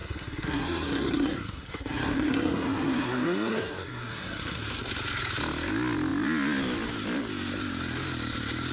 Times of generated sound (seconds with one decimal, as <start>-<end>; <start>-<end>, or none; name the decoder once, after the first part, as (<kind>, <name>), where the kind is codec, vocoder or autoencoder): 0.0-4.6 (codec, SNAC)